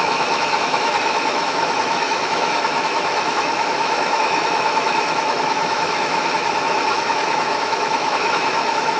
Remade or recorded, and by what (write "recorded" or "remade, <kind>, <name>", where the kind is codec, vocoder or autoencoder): remade, autoencoder, DAC-VAE